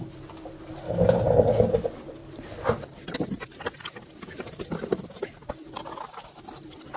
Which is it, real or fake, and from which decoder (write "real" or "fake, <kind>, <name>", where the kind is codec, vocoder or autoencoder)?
real